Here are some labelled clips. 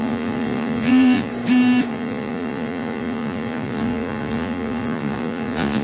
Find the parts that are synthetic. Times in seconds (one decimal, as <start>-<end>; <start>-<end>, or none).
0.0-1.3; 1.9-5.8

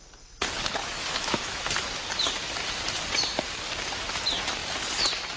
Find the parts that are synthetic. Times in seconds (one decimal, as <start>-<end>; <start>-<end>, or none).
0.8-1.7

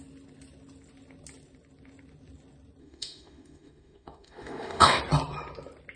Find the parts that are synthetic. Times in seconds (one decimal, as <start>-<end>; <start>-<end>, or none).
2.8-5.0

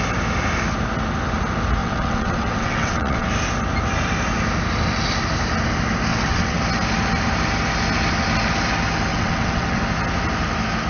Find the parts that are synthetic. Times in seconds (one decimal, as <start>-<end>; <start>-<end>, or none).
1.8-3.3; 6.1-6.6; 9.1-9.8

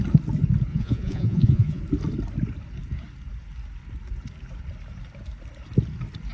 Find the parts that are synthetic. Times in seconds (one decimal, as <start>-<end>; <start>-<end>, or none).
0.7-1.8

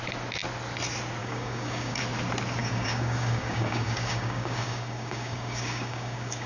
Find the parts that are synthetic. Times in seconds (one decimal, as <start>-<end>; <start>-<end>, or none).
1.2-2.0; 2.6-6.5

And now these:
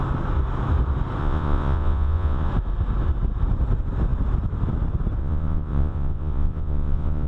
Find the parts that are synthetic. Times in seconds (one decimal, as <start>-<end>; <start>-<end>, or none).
1.2-2.5; 5.2-7.3

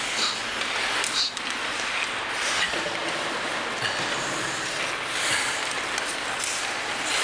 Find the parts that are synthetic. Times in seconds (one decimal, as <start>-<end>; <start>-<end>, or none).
none